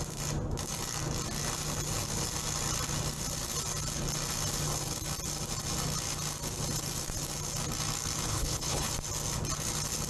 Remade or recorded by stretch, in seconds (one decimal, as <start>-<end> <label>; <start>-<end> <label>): 0.0-8.3 recorded; 8.3-8.9 remade; 8.9-10.1 recorded